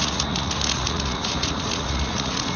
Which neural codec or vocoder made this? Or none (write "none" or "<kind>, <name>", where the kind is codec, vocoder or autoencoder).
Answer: vocoder, Vocos